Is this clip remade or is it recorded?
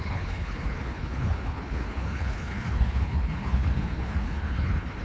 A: remade